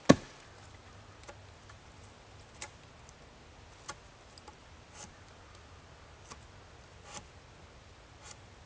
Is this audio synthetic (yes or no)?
no